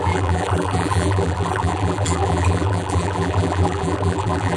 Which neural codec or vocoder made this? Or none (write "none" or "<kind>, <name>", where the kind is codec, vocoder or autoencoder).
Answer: vocoder, BigVGAN v2